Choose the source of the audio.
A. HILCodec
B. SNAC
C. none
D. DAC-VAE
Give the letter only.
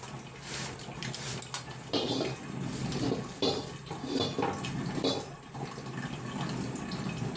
C